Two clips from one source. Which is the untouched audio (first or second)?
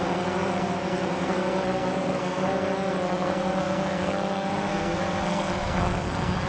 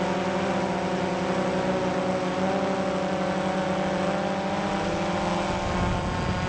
second